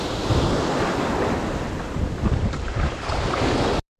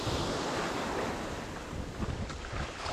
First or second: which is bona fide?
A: second